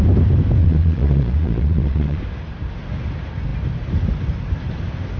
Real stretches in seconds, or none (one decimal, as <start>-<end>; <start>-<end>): 0.0-0.6; 2.2-5.2